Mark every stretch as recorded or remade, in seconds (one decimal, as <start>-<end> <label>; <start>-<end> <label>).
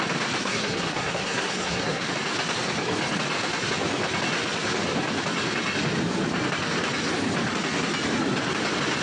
0.0-0.4 recorded; 0.4-2.1 remade; 2.1-9.0 recorded